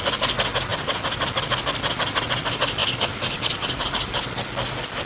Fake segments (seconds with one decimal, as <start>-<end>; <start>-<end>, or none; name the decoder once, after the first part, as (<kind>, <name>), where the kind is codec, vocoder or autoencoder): 2.8-3.9 (vocoder, BigVGAN v2)